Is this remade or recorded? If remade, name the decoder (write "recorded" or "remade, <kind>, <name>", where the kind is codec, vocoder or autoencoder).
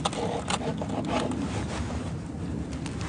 recorded